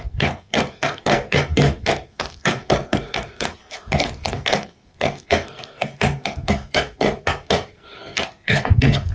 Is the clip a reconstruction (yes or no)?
yes